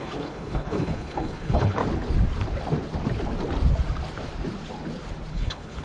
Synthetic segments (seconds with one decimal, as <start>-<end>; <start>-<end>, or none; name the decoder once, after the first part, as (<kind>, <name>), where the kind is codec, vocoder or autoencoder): 0.0-1.8 (codec, HILCodec); 5.3-5.8